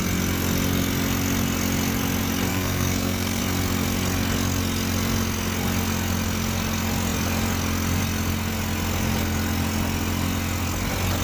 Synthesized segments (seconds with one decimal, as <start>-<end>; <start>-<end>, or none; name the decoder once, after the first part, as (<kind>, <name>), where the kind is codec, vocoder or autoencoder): 2.5-3.4 (codec, SNAC)